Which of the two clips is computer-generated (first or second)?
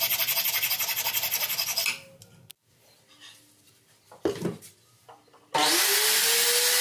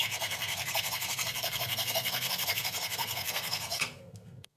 second